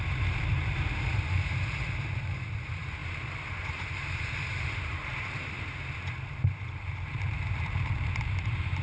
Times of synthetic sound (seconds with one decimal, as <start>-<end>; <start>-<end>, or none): 0.0-5.0; 6.5-8.8